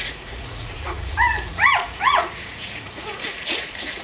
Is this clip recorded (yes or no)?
no